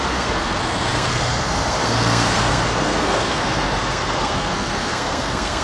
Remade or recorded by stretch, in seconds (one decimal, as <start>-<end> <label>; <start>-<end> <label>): 0.0-5.6 remade